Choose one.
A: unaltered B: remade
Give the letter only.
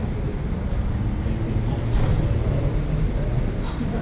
A